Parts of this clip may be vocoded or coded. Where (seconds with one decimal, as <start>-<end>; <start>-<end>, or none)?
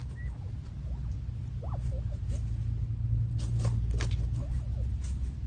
none